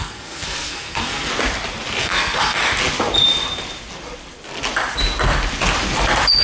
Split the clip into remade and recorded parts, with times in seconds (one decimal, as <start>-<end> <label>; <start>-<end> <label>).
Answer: 0.0-1.3 remade; 1.3-2.0 recorded; 2.0-2.6 remade; 2.6-6.4 recorded

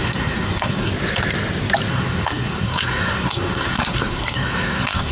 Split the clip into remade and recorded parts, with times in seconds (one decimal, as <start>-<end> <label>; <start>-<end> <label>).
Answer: 0.0-0.9 remade; 0.9-1.9 recorded; 1.9-5.1 remade

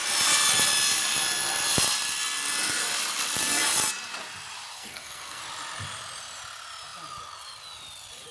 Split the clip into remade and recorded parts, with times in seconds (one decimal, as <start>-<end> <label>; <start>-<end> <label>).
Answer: 0.0-4.7 recorded; 4.7-5.4 remade; 5.4-8.3 recorded

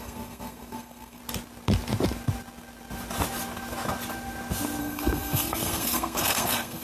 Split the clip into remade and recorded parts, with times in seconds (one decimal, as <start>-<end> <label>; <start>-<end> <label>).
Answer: 0.0-1.2 remade; 1.2-4.8 recorded; 4.8-6.8 remade